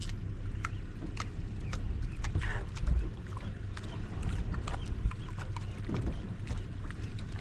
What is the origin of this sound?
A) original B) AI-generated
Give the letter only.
A